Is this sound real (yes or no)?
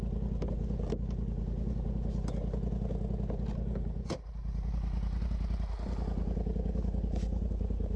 yes